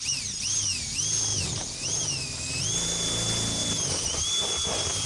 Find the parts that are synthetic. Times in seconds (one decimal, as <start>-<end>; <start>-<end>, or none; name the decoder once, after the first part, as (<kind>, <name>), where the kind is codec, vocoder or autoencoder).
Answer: 1.3-2.5 (vocoder, BigVGAN v2); 3.6-4.5